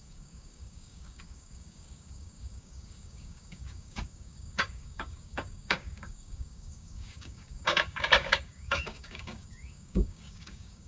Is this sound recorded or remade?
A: remade